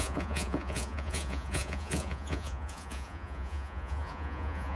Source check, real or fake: fake